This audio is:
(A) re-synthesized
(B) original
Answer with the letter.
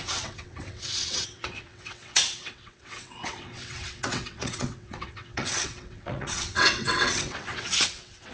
A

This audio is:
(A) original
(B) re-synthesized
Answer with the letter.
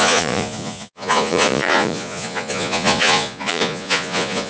B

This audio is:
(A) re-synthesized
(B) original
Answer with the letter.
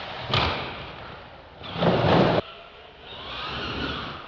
B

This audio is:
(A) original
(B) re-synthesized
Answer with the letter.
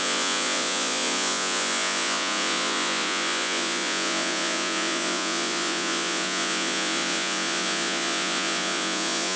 B